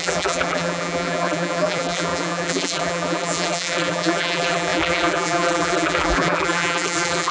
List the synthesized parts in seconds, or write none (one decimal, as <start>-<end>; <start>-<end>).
0.0-7.3